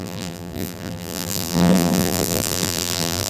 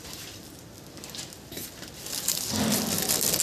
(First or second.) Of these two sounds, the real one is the second